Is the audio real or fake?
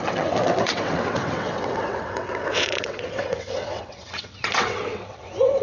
fake